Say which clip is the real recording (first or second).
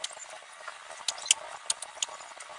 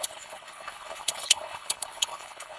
first